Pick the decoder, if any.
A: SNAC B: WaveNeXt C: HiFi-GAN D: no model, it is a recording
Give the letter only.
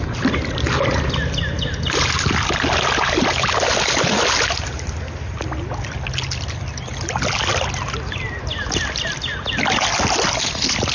D